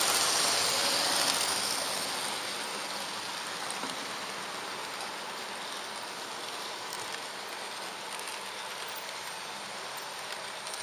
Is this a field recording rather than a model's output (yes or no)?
yes